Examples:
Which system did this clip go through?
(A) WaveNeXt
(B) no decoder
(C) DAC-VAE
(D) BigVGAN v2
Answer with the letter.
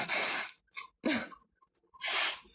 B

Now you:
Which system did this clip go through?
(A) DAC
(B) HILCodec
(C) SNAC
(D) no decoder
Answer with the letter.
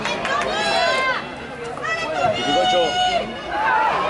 D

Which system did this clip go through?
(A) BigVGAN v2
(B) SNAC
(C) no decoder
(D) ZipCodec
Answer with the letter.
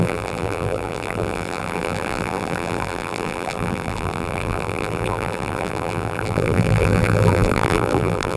A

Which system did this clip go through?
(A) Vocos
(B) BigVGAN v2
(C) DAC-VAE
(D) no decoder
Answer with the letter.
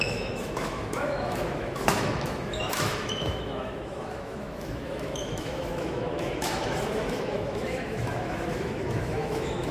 C